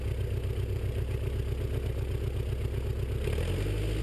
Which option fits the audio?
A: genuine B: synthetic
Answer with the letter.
A